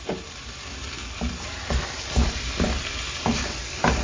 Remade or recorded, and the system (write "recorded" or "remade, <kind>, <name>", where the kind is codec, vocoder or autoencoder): recorded